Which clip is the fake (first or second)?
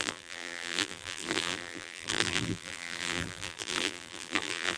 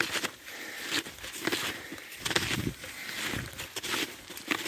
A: first